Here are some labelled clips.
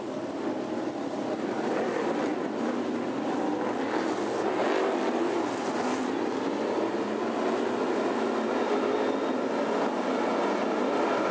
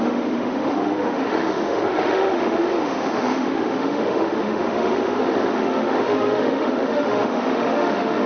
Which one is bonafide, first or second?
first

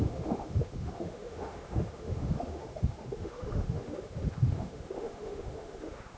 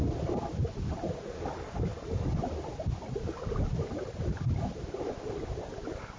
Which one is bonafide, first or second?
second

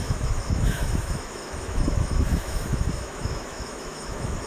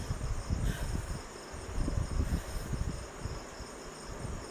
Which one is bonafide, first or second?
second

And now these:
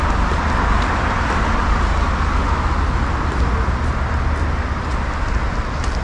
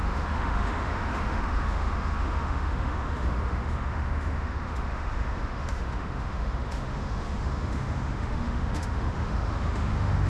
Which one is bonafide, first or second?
first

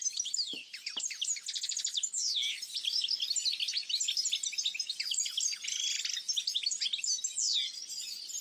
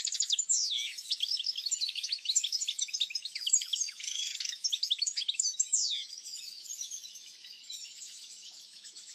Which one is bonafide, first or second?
first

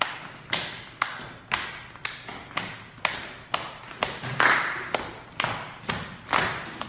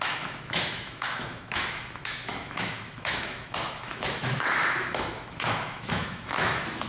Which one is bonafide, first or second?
first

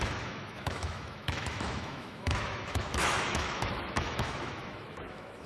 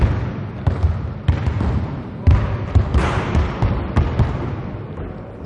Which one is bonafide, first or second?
second